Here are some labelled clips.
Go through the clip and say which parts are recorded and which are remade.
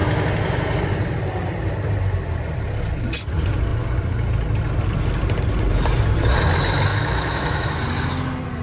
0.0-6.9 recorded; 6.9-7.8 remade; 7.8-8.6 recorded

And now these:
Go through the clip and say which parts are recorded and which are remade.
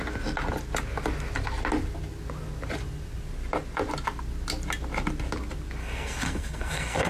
0.0-5.8 recorded; 5.8-7.1 remade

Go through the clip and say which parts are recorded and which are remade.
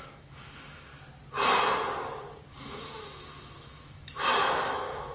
0.0-0.9 remade; 0.9-2.6 recorded; 2.6-5.1 remade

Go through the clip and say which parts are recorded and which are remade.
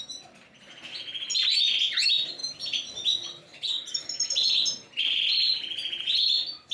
0.0-2.4 recorded; 2.4-5.3 remade; 5.3-6.7 recorded